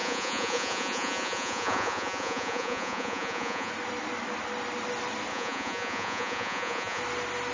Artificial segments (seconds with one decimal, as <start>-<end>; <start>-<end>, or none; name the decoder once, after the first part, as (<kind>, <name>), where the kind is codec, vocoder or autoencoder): 0.0-3.7 (vocoder, Vocos); 5.3-7.0